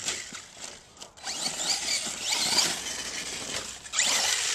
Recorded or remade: recorded